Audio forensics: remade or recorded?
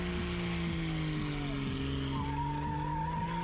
recorded